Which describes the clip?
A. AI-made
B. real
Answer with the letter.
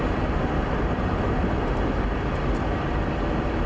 B